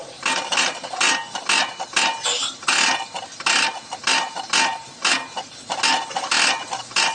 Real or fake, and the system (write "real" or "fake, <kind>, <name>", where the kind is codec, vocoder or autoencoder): real